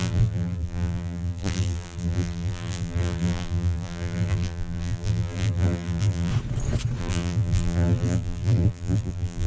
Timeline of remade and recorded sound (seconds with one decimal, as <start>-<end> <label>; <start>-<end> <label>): 0.0-6.3 remade; 6.3-7.0 recorded; 7.0-9.5 remade